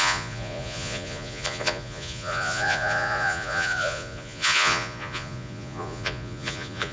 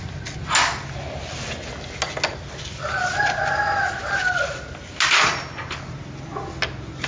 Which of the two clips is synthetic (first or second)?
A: first